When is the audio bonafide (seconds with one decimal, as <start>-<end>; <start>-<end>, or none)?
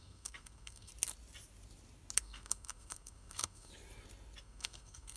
0.9-2.2; 3.7-4.4